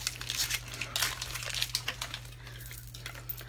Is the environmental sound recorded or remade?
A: recorded